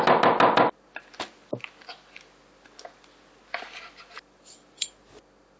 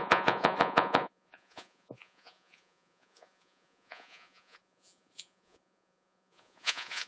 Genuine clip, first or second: first